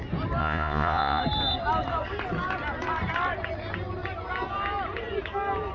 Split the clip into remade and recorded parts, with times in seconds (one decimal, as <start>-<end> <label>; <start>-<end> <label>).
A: 0.0-0.4 recorded; 0.4-1.2 remade; 1.2-5.7 recorded